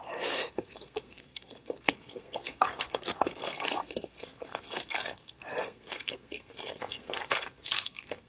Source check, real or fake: fake